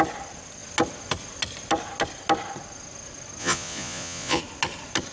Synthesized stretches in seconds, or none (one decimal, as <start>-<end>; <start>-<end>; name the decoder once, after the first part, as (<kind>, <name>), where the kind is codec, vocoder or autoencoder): 3.4-4.4 (vocoder, Vocos)